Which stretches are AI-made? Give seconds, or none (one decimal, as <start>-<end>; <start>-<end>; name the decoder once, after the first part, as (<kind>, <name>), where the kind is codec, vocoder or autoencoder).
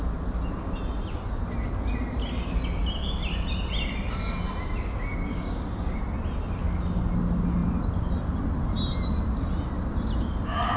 5.3-5.9 (codec, DAC)